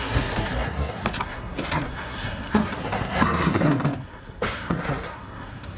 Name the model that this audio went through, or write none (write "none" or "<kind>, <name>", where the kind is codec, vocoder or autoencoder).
codec, SNAC